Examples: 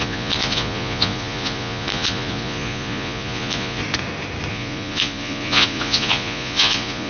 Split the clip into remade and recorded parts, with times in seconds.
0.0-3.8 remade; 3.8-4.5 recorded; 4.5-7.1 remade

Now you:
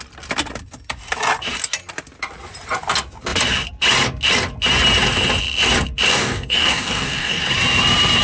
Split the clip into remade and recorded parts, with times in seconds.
0.0-6.1 recorded; 6.1-7.4 remade; 7.4-8.2 recorded

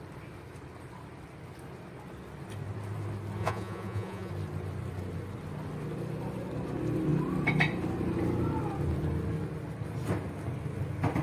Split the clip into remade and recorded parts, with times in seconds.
0.0-3.4 recorded; 3.4-4.3 remade; 4.3-11.2 recorded

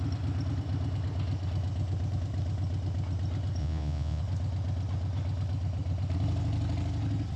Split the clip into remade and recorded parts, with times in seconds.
0.0-3.6 recorded; 3.6-4.2 remade; 4.2-7.4 recorded